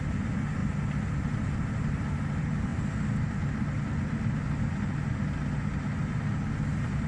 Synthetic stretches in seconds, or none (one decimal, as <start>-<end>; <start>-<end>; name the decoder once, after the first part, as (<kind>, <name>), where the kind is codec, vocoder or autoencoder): none